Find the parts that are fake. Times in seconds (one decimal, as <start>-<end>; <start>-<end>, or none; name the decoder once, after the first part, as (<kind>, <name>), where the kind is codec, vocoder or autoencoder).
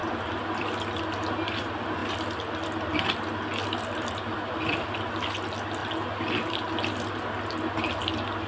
0.0-0.7 (vocoder, BigVGAN v2); 2.0-5.1; 5.8-8.0